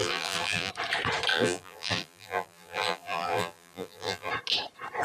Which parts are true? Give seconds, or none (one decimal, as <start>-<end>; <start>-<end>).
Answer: 0.7-1.3; 4.3-5.0